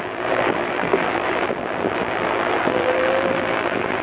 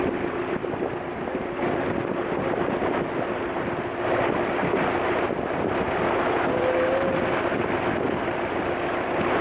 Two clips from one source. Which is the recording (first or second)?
second